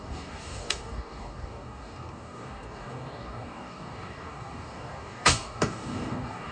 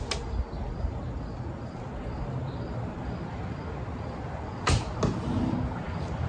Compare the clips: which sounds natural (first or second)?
second